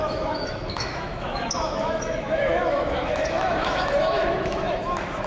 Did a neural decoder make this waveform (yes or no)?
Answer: yes